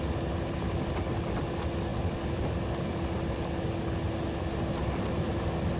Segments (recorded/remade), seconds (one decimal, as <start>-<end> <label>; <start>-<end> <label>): 0.0-5.8 recorded